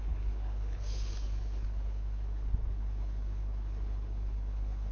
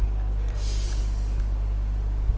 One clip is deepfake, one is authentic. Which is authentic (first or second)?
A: second